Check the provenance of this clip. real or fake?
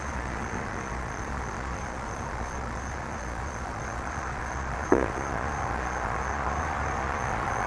fake